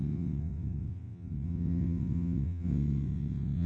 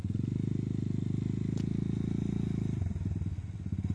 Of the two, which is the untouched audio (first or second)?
second